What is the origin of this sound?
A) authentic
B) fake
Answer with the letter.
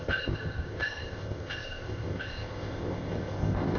B